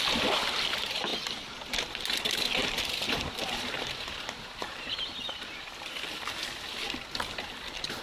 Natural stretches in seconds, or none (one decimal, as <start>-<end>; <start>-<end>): 0.0-2.6; 5.7-8.0